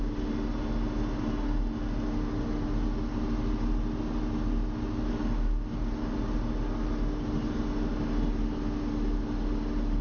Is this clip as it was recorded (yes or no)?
yes